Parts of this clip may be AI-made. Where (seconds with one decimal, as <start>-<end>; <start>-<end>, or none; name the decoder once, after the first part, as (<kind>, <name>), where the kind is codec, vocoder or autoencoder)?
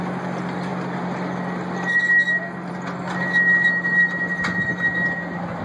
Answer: none